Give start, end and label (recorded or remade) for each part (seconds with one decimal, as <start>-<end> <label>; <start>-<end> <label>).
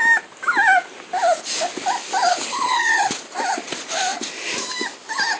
0.0-2.3 recorded; 2.3-3.1 remade; 3.1-5.4 recorded